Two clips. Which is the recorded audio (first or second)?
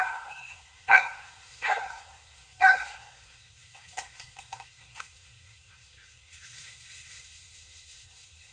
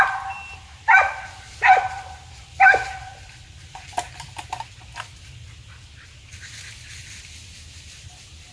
second